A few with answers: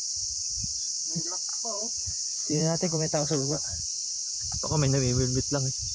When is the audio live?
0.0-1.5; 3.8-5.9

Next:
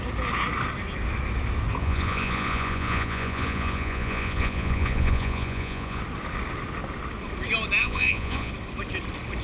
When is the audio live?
0.0-1.8; 6.0-7.8; 8.5-9.4